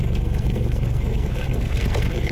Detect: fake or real fake